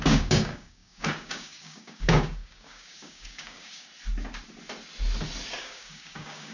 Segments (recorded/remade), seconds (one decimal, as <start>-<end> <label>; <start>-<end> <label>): 0.0-3.9 remade; 3.9-5.6 recorded; 5.6-6.5 remade